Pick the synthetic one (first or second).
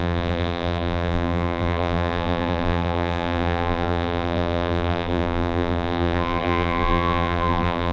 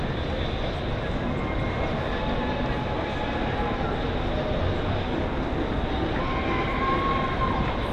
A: first